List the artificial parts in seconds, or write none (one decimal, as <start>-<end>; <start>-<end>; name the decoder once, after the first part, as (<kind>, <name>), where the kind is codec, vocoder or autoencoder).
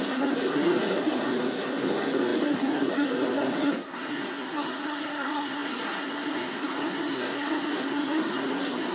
0.0-8.9 (codec, SNAC)